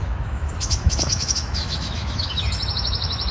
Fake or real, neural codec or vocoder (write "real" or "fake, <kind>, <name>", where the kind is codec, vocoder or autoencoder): fake, autoencoder, DAC-VAE